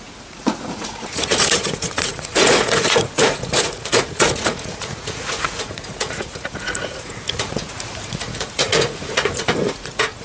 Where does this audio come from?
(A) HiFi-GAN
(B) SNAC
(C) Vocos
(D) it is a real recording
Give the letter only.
C